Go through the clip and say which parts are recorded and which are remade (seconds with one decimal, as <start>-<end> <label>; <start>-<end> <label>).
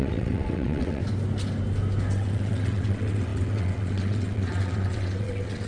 0.0-1.0 remade; 1.0-2.1 recorded; 2.1-5.7 remade